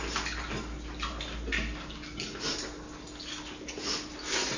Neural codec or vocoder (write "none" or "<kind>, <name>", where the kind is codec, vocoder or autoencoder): none